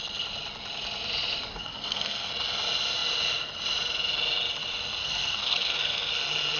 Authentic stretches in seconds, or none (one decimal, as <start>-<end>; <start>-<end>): 0.0-1.5; 2.3-5.0; 6.1-6.6